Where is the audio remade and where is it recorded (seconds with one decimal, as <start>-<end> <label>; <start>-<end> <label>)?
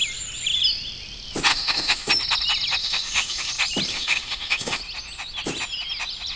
0.0-1.5 recorded; 1.5-2.1 remade; 2.1-2.8 recorded; 2.8-3.5 remade; 3.5-3.9 recorded; 3.9-4.8 remade; 4.8-6.4 recorded